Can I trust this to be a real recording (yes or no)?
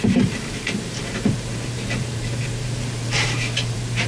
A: no